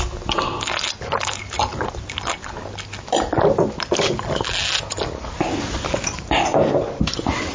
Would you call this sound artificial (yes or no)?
no